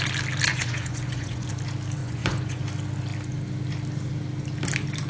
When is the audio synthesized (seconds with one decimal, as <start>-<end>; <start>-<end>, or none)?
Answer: 0.5-1.5; 2.0-2.6